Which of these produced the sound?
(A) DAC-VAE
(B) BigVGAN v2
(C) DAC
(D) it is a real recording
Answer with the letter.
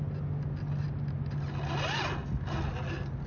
D